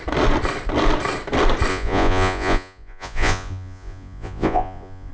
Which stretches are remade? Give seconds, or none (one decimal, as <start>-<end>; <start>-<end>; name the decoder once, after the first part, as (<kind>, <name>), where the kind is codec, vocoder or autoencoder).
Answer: 1.7-5.1 (vocoder, Vocos)